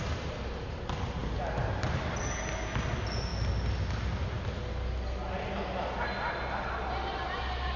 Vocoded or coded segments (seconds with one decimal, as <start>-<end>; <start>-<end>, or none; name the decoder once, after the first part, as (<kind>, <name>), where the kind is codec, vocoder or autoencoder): none